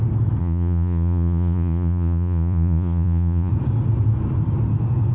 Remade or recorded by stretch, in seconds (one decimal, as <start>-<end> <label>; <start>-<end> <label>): 0.0-0.4 recorded; 0.4-3.5 remade; 3.5-5.1 recorded

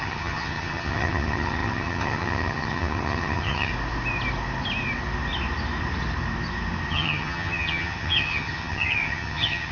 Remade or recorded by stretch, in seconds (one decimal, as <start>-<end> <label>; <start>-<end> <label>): 0.0-3.7 remade; 3.7-6.9 recorded; 6.9-9.7 remade

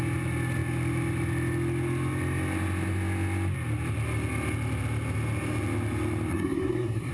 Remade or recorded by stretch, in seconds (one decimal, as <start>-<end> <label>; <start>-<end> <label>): 0.0-6.3 recorded; 6.3-7.1 remade

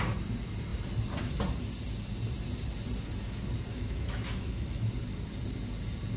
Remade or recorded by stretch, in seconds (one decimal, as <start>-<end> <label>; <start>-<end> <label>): 0.0-3.7 recorded; 3.7-5.0 remade; 5.0-6.2 recorded

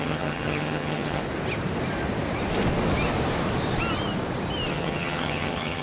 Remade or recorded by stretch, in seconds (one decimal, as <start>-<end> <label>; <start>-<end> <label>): 0.0-1.2 remade; 1.2-4.7 recorded; 4.7-5.8 remade

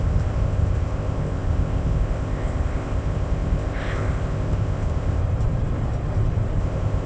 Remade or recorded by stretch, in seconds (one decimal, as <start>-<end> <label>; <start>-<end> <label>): 0.0-5.2 remade; 5.2-6.6 recorded; 6.6-7.1 remade

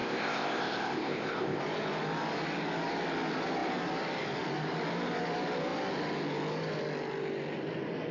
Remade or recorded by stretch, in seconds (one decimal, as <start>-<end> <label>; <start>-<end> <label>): 0.0-1.6 remade; 1.6-8.1 recorded

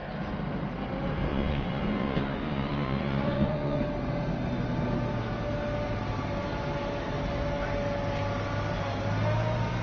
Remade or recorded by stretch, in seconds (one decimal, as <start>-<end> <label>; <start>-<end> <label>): 0.0-1.3 recorded; 1.3-3.8 remade; 3.8-9.8 recorded